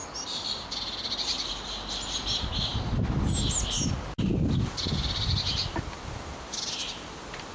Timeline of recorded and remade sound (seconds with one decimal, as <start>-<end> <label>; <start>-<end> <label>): 0.0-7.5 recorded